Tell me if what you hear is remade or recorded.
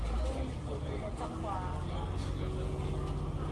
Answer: recorded